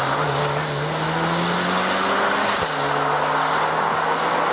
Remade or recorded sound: recorded